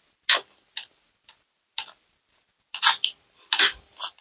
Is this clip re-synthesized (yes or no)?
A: no